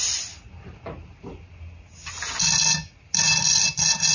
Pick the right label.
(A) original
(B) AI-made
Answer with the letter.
A